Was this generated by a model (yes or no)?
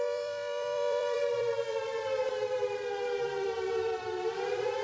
yes